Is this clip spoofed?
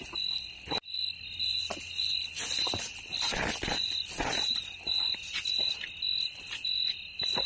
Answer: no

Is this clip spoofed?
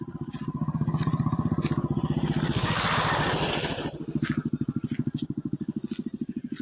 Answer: no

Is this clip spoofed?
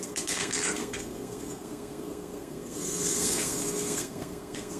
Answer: yes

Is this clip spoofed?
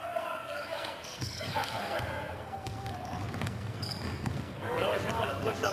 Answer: yes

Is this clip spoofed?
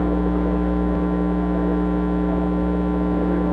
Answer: no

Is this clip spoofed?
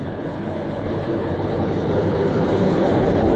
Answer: yes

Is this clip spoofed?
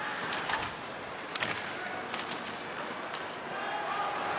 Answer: no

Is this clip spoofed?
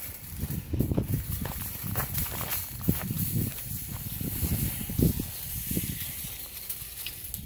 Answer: no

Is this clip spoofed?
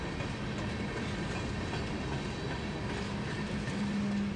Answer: no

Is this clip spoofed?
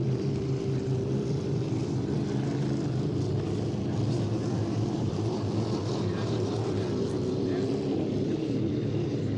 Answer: yes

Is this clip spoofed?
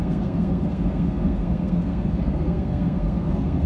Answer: yes